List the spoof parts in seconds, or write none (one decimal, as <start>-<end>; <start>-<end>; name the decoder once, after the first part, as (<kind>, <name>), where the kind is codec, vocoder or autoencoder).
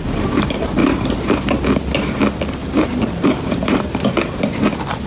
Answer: 0.8-1.4 (vocoder, BigVGAN v2); 2.6-4.4